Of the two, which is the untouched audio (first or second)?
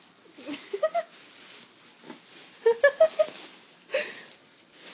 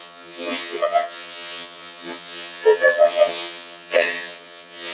first